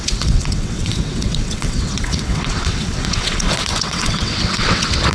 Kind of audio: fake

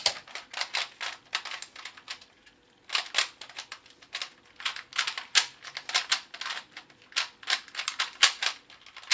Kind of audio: real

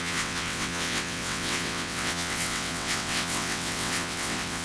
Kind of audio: fake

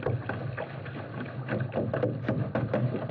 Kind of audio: real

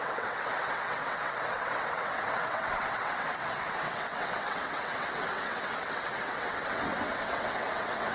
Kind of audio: fake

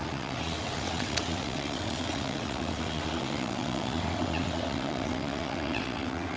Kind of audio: fake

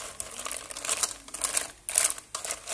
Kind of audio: real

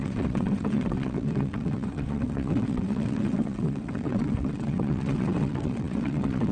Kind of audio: fake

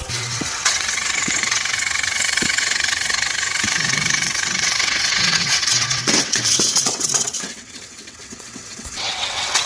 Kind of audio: fake